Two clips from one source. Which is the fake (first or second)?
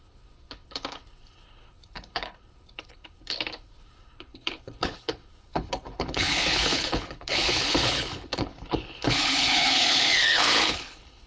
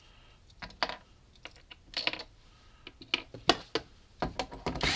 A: first